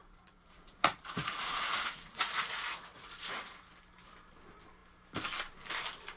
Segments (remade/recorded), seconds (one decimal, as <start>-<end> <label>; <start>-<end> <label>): 0.0-3.7 remade; 3.7-6.2 recorded